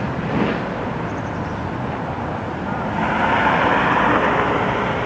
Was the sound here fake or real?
real